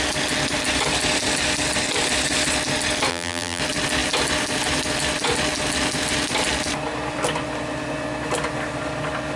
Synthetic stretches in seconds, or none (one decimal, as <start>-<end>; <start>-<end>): 3.1-3.6